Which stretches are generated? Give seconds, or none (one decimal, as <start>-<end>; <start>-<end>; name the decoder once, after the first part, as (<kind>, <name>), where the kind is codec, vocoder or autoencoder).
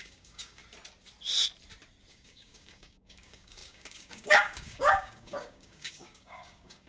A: 0.0-0.6 (codec, DAC); 2.1-6.9